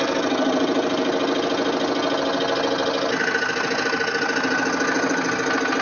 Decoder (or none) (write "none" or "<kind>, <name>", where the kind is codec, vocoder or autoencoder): none